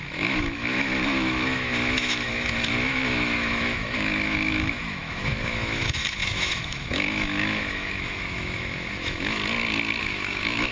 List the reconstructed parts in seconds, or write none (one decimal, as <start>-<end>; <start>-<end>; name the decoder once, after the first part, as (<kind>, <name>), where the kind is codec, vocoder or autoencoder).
0.0-9.4 (autoencoder, DAC-VAE); 10.0-10.7